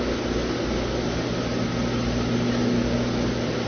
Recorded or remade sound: recorded